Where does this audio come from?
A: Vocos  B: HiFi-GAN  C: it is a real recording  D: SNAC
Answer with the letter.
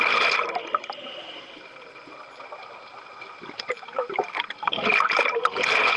C